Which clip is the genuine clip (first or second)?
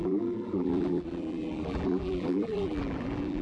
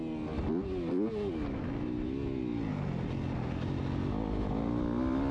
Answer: second